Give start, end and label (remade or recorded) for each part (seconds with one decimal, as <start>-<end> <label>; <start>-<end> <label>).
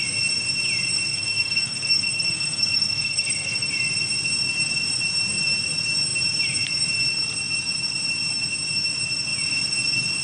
0.0-1.1 recorded; 1.1-3.7 remade; 3.7-10.2 recorded